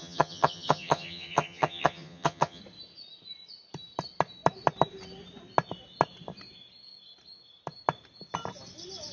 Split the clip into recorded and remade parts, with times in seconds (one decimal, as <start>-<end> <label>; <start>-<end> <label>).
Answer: 0.0-2.6 remade; 2.6-9.1 recorded